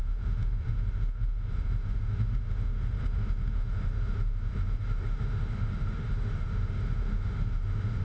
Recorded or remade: remade